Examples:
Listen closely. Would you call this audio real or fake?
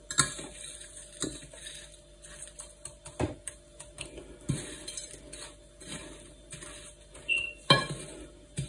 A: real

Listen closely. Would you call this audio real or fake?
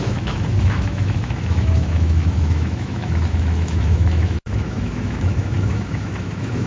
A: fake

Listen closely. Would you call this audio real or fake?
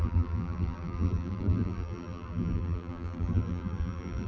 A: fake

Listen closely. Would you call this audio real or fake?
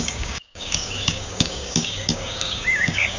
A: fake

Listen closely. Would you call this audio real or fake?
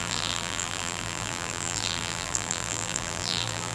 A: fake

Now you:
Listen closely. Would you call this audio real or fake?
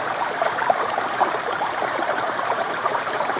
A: fake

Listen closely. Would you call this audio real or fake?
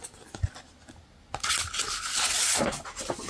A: real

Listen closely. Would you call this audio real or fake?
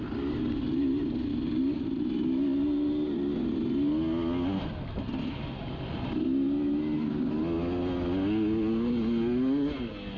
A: real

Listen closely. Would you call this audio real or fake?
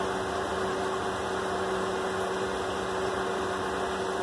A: real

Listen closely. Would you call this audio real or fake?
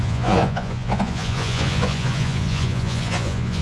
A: fake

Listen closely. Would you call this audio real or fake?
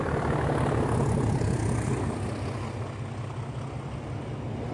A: real